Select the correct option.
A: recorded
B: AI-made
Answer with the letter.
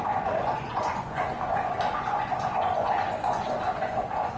B